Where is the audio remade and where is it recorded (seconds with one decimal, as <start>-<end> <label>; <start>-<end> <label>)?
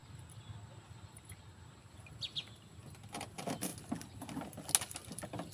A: 0.0-5.5 recorded